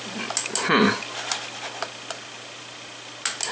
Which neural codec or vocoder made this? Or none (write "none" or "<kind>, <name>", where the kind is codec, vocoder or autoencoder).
none